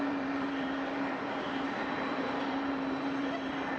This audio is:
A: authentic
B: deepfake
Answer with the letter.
B